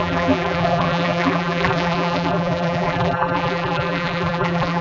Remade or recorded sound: remade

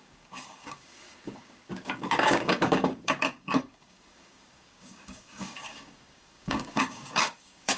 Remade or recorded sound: remade